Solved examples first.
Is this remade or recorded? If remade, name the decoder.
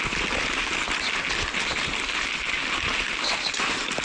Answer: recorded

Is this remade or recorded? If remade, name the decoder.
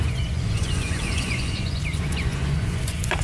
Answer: remade, vocoder, Vocos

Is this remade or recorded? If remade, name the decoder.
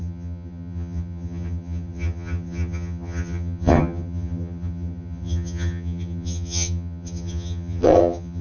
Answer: remade, vocoder, HiFi-GAN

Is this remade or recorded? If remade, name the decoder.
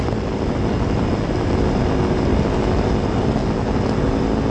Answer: recorded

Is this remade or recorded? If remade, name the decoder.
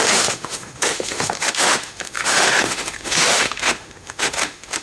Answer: remade, autoencoder, DAC-VAE